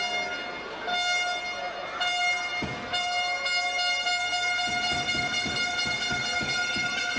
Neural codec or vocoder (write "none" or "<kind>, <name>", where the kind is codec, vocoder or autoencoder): none